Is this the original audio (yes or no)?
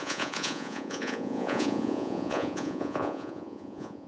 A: no